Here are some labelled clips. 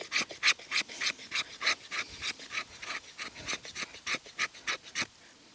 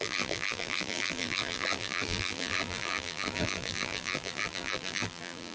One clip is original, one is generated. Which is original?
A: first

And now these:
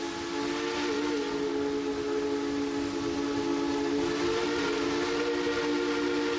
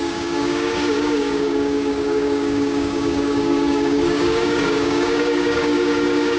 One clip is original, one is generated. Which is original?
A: first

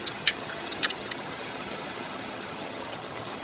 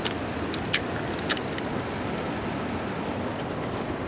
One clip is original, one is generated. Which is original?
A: second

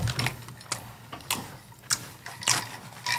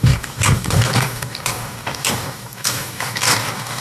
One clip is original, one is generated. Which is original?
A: first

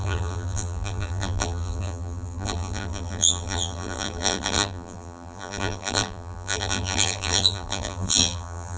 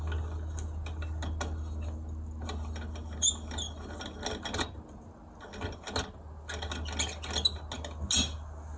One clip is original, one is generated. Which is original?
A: second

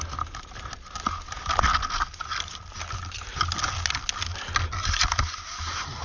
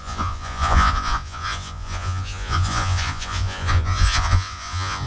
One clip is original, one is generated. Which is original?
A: first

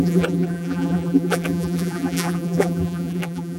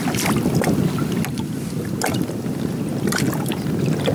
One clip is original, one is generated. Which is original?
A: second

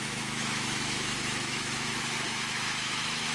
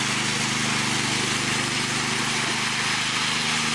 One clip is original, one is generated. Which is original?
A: second